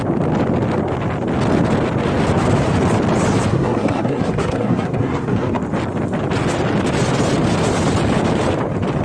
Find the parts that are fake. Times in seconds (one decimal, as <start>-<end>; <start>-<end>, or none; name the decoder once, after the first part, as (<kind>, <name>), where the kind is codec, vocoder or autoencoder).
3.5-5.6 (codec, SNAC)